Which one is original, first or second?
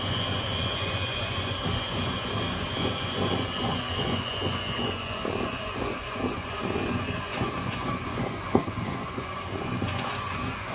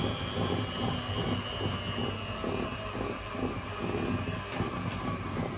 second